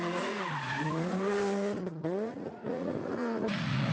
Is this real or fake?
fake